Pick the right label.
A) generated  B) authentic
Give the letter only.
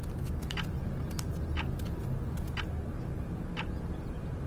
B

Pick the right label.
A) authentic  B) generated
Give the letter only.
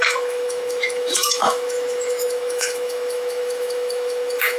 B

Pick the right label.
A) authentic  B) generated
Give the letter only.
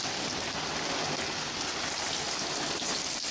A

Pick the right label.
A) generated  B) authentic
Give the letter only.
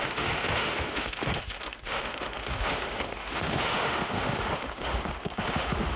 A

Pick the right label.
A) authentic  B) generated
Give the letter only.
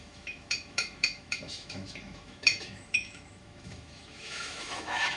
B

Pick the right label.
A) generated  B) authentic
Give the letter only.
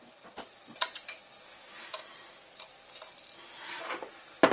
B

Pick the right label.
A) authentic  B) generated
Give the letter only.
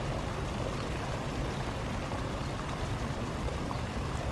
A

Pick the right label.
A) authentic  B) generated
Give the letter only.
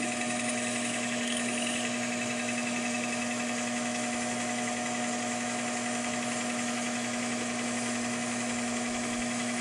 B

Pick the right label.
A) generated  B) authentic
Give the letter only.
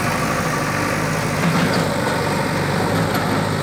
B